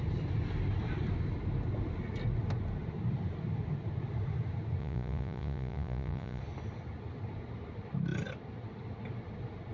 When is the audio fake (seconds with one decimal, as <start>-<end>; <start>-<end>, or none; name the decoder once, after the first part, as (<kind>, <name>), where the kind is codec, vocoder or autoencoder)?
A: 4.8-6.4 (vocoder, Vocos)